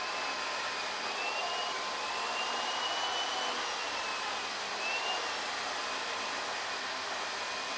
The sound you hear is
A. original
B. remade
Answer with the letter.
A